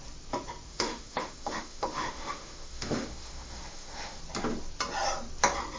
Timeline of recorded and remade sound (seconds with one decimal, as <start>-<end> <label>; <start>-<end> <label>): 0.0-0.7 recorded; 0.7-4.2 remade; 4.2-5.8 recorded